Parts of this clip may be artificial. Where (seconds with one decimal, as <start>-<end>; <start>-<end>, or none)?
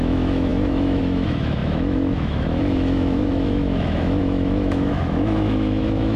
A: 0.0-6.2